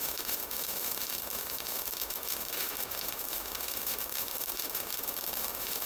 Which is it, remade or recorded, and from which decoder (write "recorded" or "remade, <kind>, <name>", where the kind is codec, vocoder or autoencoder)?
remade, autoencoder, DAC-VAE